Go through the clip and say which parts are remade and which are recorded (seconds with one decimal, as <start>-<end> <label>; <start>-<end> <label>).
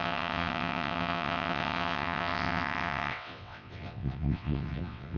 0.0-5.2 remade